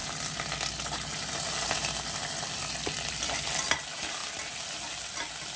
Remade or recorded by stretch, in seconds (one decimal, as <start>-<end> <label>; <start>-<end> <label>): 0.0-5.6 recorded